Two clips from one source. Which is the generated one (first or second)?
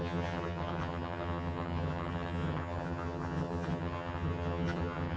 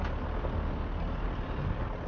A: first